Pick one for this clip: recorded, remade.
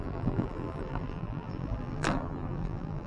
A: remade